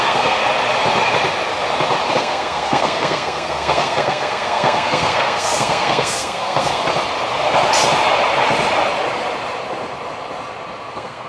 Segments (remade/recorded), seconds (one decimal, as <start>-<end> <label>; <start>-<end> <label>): 0.0-0.4 remade; 0.4-2.1 recorded; 2.1-6.8 remade; 6.8-10.9 recorded; 10.9-11.3 remade